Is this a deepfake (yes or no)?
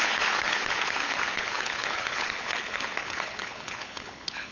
yes